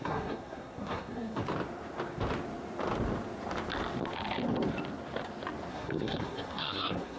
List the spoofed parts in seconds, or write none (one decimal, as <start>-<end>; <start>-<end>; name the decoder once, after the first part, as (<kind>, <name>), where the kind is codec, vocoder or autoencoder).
0.0-1.4 (codec, SNAC); 5.7-7.2